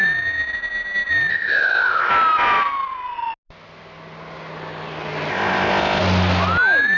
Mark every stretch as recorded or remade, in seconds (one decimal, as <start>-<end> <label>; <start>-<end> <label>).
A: 0.0-1.3 recorded; 1.3-2.1 remade; 2.1-5.3 recorded; 5.3-6.0 remade; 6.0-7.0 recorded